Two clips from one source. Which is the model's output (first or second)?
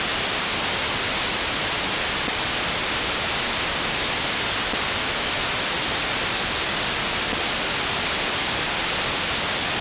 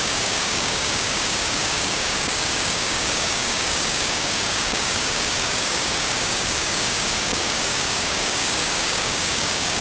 second